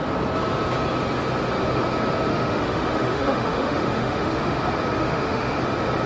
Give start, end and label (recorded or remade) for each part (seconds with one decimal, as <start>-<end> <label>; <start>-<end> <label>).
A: 0.0-2.3 recorded; 2.3-4.6 remade; 4.6-5.0 recorded; 5.0-5.6 remade; 5.6-6.1 recorded